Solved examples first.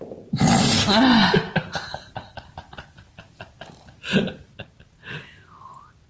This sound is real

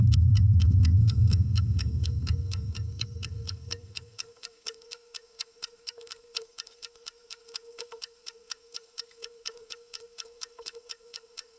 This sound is fake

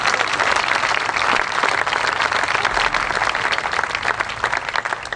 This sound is real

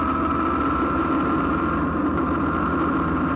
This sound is real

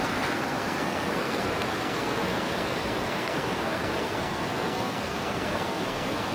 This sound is fake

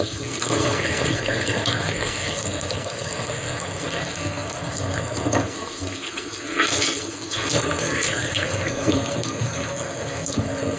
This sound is fake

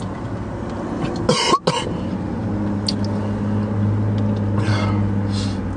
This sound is real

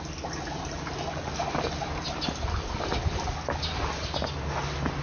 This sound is real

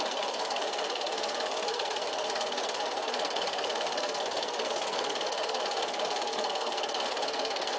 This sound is fake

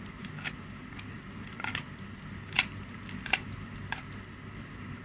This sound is real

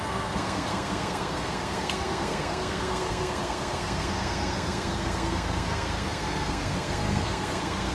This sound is fake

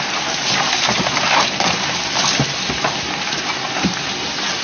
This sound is real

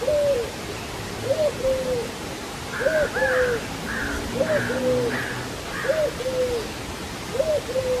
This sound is real